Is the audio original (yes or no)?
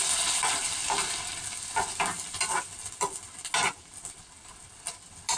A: yes